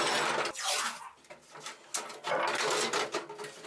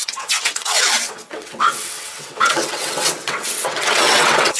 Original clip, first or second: first